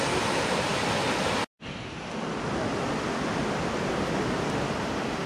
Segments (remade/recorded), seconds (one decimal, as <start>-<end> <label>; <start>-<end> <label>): 0.0-0.7 remade; 0.7-3.9 recorded; 3.9-5.3 remade